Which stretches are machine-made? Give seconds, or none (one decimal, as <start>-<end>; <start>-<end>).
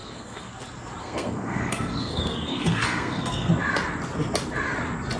0.0-0.5; 1.0-3.5